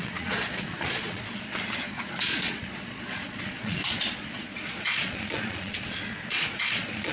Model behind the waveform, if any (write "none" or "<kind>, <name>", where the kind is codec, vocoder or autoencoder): vocoder, Vocos